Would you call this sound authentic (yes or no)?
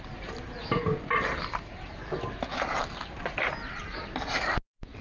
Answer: yes